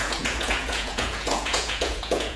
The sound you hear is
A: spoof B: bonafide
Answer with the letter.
A